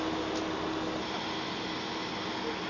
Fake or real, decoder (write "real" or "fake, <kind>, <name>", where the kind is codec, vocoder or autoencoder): real